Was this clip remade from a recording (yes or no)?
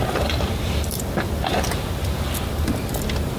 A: yes